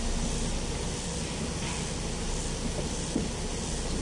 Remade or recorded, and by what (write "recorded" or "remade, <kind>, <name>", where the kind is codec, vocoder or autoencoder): recorded